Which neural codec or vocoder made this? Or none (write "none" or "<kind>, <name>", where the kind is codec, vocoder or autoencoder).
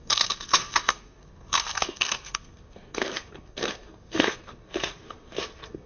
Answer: codec, SNAC